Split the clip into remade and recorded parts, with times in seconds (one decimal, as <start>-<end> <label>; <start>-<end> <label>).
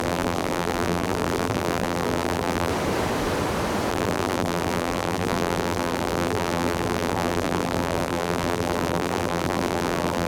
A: 0.0-2.7 remade; 2.7-3.9 recorded; 3.9-10.3 remade